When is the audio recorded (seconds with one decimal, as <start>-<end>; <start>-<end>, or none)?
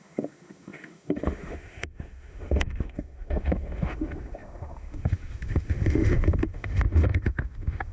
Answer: none